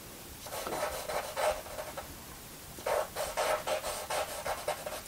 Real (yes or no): yes